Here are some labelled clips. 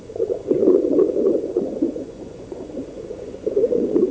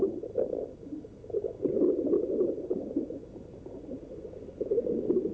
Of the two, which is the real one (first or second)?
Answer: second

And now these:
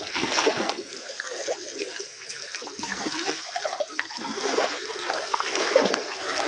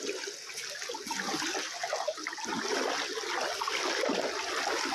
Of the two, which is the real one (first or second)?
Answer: second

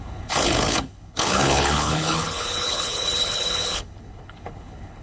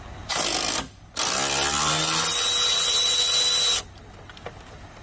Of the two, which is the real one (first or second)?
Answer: second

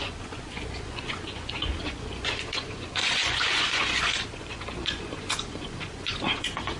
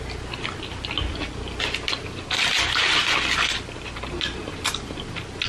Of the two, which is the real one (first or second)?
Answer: second